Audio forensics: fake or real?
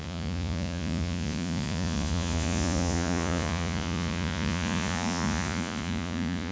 fake